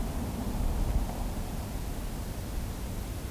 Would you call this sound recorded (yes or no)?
yes